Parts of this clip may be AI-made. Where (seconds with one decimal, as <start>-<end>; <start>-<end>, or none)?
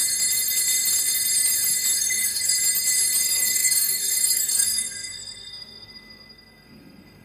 2.0-2.5; 3.2-7.2